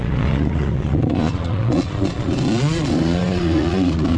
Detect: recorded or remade remade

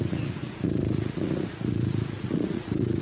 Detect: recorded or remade remade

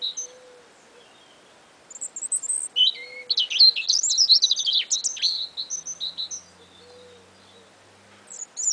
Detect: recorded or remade recorded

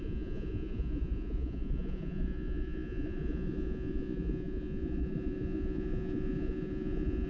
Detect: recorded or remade remade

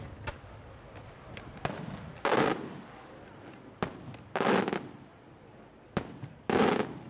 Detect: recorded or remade recorded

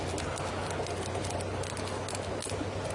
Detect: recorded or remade recorded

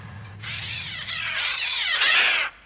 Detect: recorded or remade remade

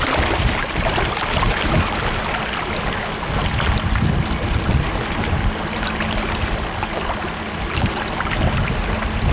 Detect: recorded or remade recorded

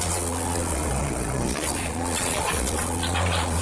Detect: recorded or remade remade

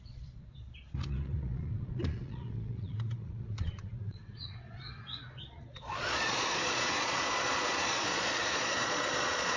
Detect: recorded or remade remade